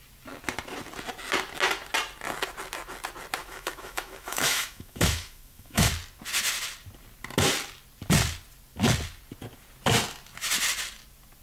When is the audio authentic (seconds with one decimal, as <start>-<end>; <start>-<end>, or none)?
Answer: 0.0-3.4; 5.9-11.4